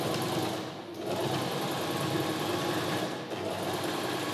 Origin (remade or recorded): recorded